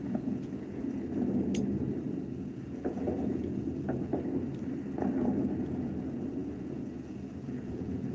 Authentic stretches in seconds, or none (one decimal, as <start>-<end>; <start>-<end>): 0.8-2.4; 4.1-5.6